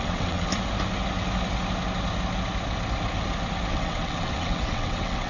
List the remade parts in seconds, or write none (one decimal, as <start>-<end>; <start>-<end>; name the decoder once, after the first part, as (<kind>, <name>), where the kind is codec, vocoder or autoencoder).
0.0-0.5 (vocoder, WaveNeXt); 3.7-5.3